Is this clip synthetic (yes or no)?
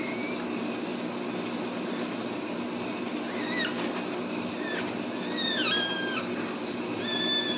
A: no